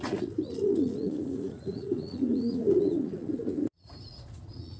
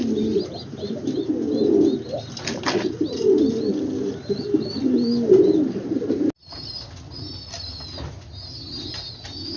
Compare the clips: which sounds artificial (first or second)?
first